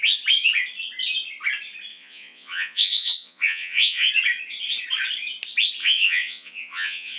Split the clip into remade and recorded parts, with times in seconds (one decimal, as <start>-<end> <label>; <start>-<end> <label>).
0.0-1.9 recorded; 1.9-4.1 remade; 4.1-5.8 recorded; 5.8-7.2 remade